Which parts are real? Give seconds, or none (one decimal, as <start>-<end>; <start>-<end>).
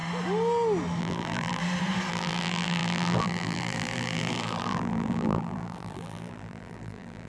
0.0-1.0; 1.6-2.1